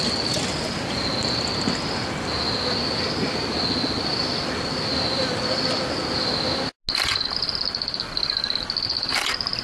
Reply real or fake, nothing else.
real